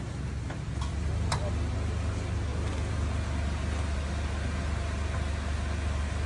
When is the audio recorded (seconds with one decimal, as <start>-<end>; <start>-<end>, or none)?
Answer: 0.0-6.3